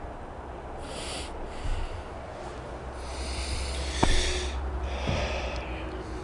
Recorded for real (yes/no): yes